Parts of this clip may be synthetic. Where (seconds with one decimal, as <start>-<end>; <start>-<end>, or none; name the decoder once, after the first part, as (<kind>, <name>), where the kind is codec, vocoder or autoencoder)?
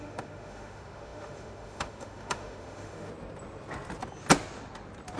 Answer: 0.0-3.1 (autoencoder, DAC-VAE)